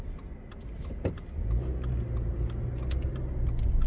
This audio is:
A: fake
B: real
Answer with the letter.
B